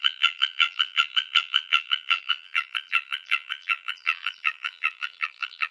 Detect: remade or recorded remade